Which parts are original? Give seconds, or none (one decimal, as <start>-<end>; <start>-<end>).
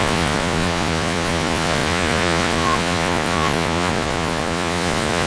none